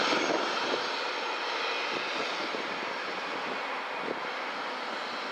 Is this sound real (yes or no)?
yes